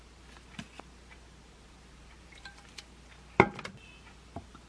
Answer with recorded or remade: recorded